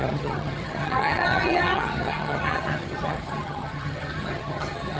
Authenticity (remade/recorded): remade